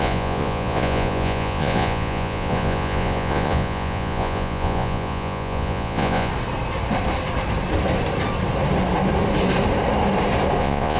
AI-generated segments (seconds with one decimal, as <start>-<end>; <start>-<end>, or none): 0.0-6.3; 10.6-11.0